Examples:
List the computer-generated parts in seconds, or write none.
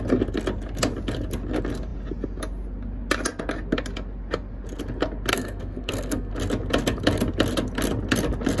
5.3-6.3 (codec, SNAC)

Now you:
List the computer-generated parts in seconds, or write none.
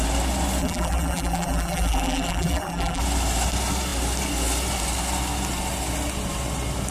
0.6-3.0 (vocoder, BigVGAN v2)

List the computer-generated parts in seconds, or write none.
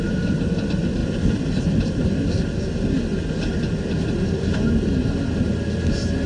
1.0-3.2 (vocoder, BigVGAN v2)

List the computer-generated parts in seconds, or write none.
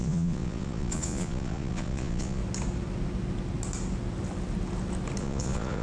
0.0-2.4 (vocoder, Vocos); 5.2-5.8